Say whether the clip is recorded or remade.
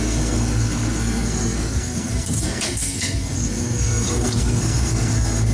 remade